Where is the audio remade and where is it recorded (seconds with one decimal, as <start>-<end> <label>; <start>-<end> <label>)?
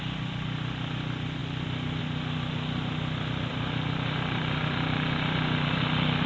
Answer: 0.0-3.5 recorded; 3.5-5.8 remade; 5.8-6.3 recorded